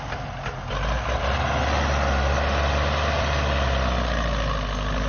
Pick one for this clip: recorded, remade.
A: recorded